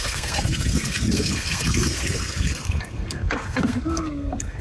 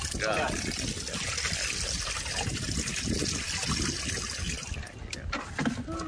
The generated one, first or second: first